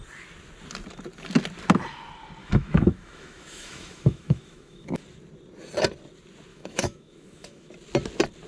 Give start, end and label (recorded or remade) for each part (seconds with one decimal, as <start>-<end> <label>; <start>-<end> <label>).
0.0-2.4 recorded; 2.4-5.0 remade; 5.0-6.5 recorded; 6.5-7.7 remade; 7.7-8.5 recorded